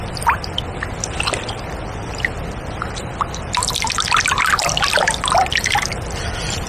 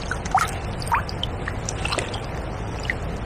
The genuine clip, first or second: second